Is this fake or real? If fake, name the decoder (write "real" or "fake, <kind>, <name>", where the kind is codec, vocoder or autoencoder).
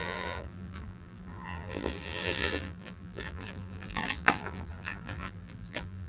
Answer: fake, vocoder, BigVGAN v2